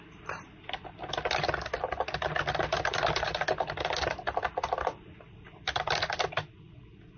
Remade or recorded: recorded